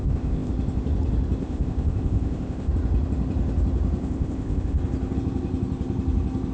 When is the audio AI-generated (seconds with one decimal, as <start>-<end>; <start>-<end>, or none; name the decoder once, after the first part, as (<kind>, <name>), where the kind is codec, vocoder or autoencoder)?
0.0-0.5 (codec, ZipCodec); 1.4-2.7; 4.0-4.8